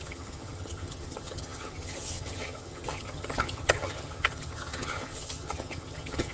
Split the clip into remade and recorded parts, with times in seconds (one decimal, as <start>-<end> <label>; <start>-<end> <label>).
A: 0.0-6.3 remade